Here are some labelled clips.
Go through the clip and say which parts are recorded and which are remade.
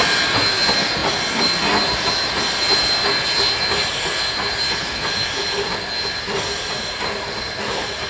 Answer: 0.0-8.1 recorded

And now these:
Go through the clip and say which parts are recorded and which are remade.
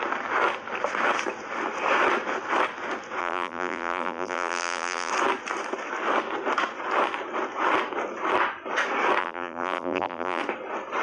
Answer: 0.0-3.2 recorded; 3.2-5.1 remade; 5.1-9.2 recorded; 9.2-10.4 remade; 10.4-11.0 recorded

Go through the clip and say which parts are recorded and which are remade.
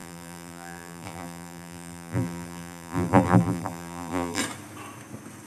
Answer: 0.0-4.4 remade; 4.4-5.5 recorded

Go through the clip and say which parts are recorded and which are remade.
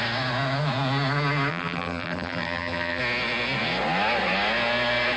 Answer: 0.0-1.5 recorded; 1.5-3.0 remade; 3.0-5.2 recorded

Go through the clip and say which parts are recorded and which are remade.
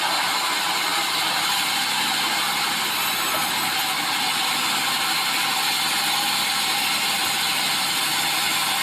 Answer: 0.0-8.8 recorded